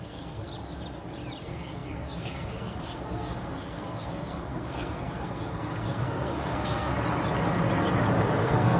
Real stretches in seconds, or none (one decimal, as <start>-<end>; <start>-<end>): 0.5-1.4; 6.9-8.4